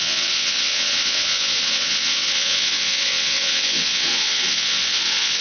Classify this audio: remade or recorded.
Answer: remade